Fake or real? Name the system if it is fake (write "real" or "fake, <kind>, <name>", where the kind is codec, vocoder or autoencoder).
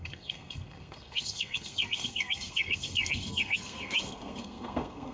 fake, codec, SNAC